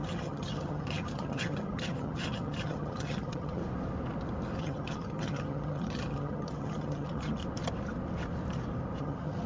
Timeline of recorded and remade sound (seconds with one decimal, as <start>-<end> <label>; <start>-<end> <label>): 0.0-3.6 remade; 3.6-4.6 recorded; 4.6-7.4 remade; 7.4-9.0 recorded; 9.0-9.5 remade